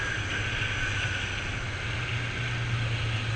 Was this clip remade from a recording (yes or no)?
no